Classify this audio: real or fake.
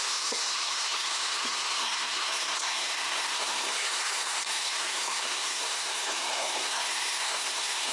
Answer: fake